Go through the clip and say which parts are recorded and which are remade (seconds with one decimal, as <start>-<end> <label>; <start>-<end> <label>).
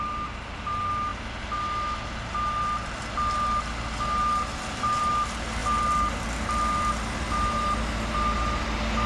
0.0-9.1 recorded